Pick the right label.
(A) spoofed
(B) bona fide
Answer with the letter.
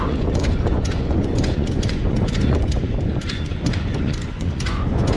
A